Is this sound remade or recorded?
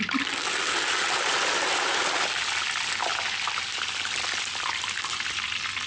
recorded